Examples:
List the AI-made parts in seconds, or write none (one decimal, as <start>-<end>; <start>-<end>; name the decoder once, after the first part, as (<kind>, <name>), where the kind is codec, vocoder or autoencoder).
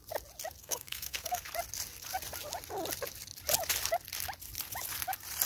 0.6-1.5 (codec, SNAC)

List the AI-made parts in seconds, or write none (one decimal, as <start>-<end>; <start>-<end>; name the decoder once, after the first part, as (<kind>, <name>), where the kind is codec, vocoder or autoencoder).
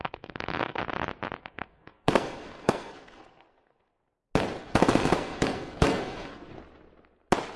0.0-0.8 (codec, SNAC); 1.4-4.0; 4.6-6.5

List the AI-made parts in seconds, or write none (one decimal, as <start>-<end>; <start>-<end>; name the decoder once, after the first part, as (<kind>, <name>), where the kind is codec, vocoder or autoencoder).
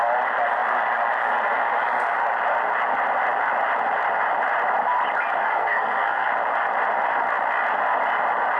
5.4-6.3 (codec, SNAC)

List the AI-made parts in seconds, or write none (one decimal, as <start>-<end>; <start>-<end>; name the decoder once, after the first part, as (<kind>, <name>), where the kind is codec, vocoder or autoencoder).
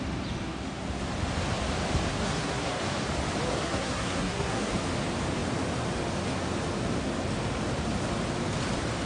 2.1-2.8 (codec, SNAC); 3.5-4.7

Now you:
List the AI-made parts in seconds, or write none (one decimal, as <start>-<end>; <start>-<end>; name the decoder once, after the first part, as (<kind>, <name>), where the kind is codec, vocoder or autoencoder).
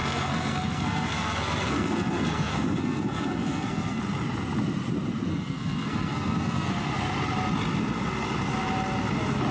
0.0-4.0 (codec, SNAC); 5.3-6.7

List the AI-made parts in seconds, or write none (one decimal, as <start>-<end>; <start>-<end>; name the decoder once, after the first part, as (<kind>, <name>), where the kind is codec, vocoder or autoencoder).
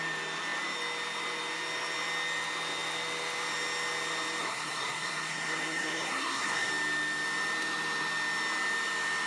4.4-6.7 (codec, SNAC)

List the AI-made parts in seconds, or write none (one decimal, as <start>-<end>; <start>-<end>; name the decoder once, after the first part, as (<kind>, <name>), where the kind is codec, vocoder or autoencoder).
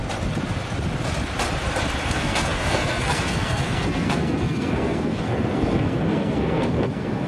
2.1-7.3 (codec, SNAC)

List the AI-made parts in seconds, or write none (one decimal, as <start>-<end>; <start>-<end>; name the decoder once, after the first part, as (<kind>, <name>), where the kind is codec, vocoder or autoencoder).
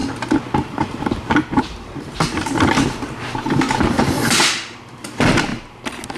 none